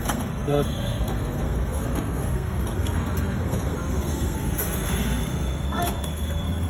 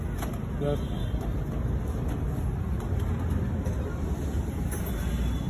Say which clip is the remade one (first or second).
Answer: first